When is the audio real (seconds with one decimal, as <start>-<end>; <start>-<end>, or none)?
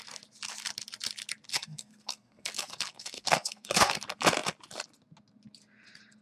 0.0-1.5; 4.0-6.2